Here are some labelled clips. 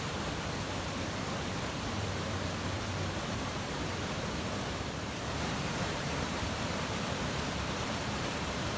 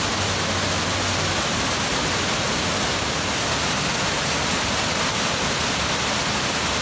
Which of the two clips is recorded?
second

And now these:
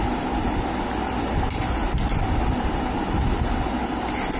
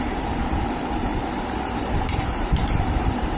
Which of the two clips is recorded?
first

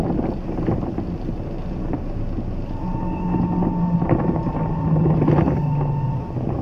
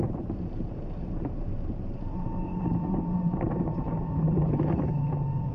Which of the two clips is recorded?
first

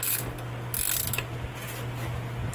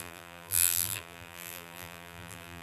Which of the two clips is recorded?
first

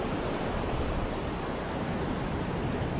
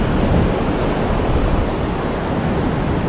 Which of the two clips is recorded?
second